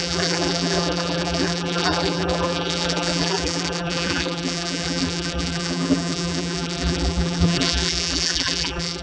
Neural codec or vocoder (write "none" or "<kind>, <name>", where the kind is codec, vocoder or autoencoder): vocoder, BigVGAN v2